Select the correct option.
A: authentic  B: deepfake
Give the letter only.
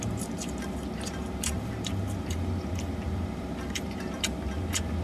B